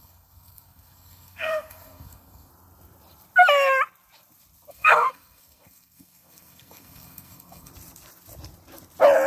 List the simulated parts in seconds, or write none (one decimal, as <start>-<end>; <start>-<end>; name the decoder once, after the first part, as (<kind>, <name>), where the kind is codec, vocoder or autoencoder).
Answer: 0.0-2.5 (codec, SNAC); 4.7-7.7